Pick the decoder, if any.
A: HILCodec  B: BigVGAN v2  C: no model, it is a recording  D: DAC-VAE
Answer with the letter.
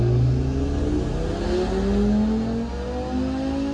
C